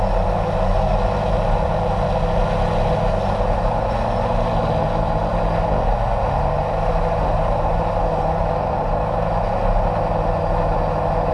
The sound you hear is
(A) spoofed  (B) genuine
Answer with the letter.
B